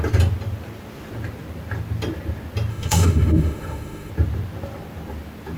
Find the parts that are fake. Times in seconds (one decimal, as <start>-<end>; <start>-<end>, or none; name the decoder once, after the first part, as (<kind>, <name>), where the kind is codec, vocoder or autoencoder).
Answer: 2.7-4.1 (autoencoder, DAC-VAE)